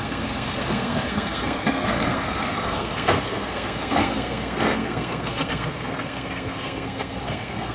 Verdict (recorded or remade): remade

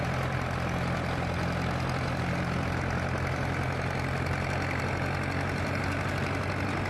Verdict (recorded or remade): recorded